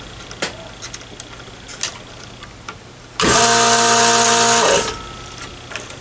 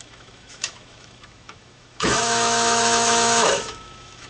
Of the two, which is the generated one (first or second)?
second